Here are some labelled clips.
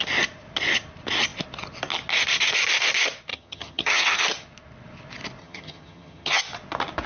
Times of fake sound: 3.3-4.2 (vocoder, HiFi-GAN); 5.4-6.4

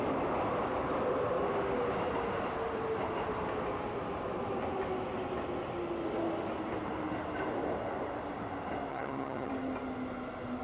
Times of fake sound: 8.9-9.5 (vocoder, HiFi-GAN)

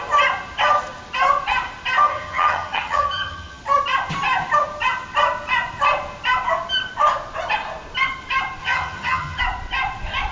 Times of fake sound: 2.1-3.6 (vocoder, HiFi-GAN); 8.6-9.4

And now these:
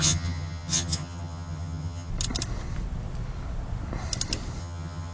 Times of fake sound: 0.0-2.1 (vocoder, HiFi-GAN); 4.6-5.1

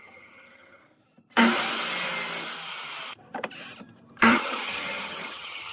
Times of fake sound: 0.0-0.8 (vocoder, HiFi-GAN); 4.2-5.7